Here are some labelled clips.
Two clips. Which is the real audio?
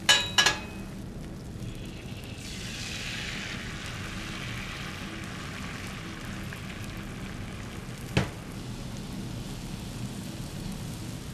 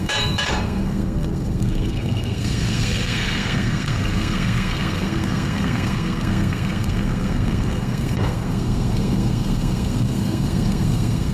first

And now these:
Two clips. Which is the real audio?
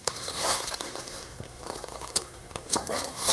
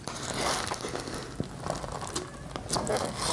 second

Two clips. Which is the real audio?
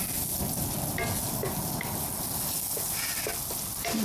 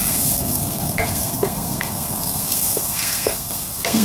first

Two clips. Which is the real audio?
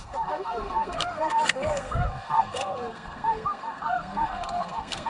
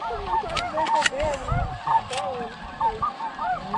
second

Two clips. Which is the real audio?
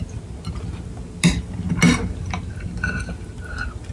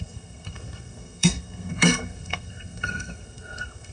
first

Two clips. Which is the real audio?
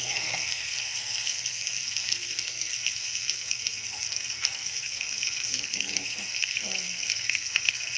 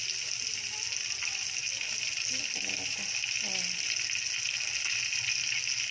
second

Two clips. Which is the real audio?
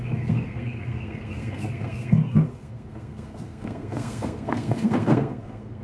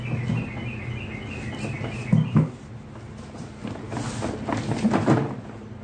second